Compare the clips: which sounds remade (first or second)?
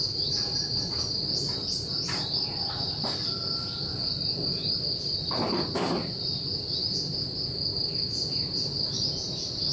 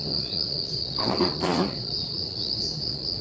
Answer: second